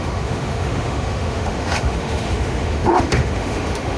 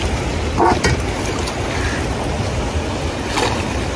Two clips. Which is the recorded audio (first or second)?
second